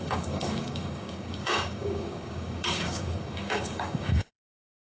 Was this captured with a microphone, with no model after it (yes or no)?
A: no